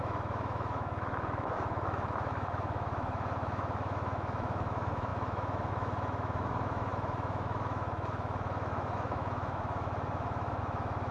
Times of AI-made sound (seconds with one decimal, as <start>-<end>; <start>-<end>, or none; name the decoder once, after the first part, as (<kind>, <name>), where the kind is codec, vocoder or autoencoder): 0.0-11.1 (autoencoder, DAC-VAE)